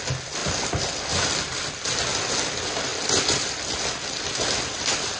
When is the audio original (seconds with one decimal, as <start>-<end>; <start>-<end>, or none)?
0.0-5.2

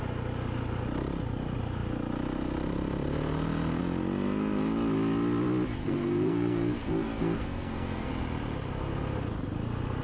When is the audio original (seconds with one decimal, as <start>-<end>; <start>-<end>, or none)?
0.0-5.8; 8.1-10.0

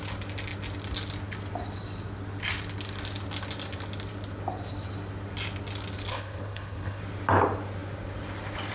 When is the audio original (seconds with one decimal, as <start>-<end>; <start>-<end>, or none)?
0.0-6.1; 7.0-8.7